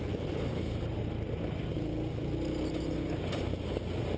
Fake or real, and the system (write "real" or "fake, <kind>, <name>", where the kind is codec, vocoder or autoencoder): real